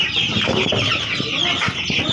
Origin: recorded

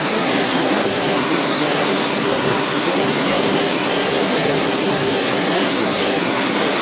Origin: remade